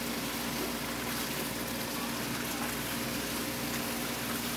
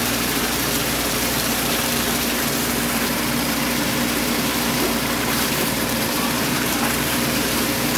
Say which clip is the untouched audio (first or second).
first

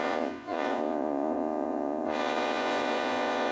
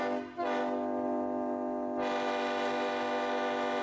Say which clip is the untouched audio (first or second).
second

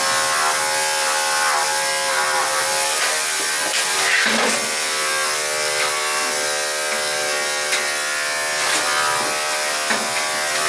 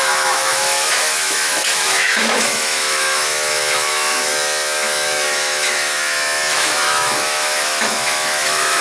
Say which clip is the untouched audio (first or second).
first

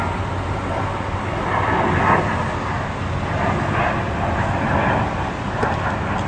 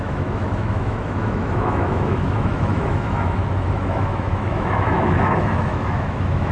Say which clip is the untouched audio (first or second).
first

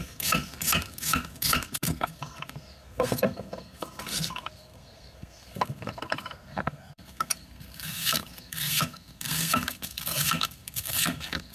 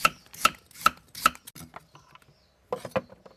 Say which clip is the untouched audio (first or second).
second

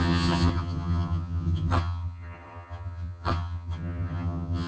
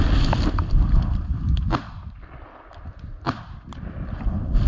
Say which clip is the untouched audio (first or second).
second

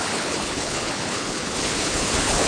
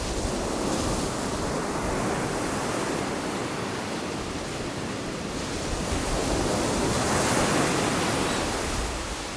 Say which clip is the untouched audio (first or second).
second